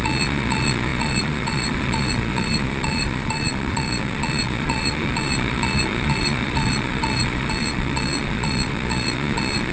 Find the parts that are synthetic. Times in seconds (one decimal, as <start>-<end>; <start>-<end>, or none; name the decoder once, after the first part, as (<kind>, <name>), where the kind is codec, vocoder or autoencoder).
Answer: 0.0-9.7 (vocoder, Vocos)